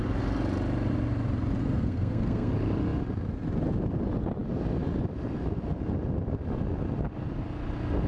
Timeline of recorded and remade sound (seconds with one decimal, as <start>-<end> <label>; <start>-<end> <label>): 0.0-1.6 recorded; 1.6-2.5 remade; 2.5-8.1 recorded